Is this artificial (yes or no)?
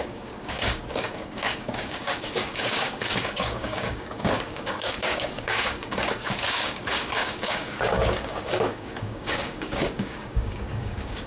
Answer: yes